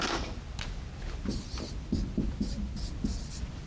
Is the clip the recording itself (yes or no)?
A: yes